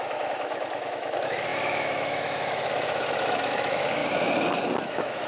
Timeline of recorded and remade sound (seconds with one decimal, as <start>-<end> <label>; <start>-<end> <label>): 0.0-4.0 remade; 4.0-4.8 recorded; 4.8-5.3 remade